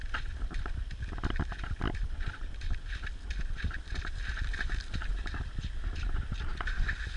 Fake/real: real